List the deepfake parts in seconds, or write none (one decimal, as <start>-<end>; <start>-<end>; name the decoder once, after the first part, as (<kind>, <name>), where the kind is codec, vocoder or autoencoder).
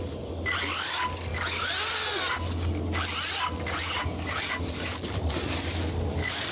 none